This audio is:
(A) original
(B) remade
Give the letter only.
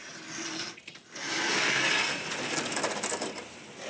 A